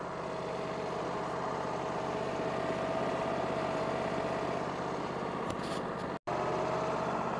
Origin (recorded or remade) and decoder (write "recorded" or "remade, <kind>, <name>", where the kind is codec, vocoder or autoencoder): recorded